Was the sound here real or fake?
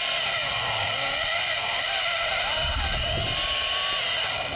real